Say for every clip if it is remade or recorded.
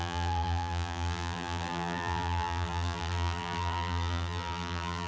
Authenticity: remade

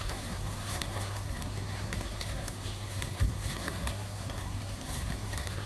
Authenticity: remade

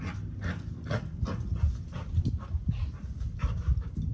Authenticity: recorded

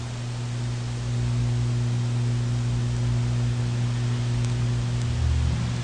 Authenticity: recorded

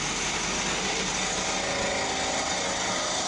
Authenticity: recorded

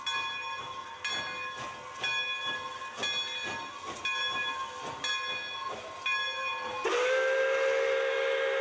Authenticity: recorded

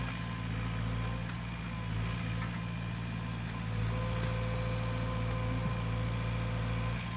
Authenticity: recorded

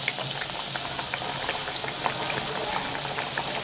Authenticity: recorded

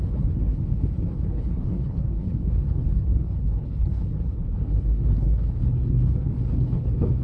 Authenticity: remade